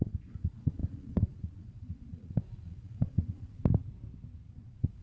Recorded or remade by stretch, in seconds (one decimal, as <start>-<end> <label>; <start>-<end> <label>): 0.0-3.6 remade; 3.6-4.5 recorded; 4.5-5.0 remade